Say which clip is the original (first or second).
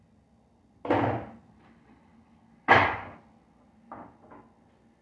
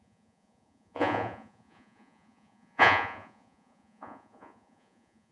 first